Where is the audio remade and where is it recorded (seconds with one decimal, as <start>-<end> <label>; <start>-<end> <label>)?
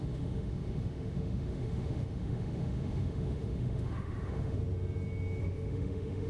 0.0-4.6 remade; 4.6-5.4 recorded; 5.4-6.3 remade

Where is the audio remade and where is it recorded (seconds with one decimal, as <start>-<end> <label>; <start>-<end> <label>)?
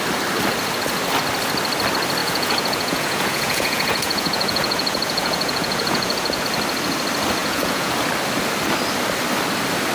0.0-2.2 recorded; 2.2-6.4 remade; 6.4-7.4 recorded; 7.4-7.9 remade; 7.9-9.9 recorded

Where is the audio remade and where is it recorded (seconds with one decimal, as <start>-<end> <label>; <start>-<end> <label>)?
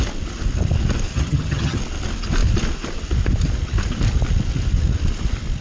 0.0-1.1 recorded; 1.1-1.8 remade; 1.8-5.6 recorded